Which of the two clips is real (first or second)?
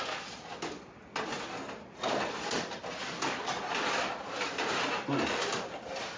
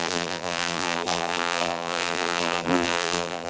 first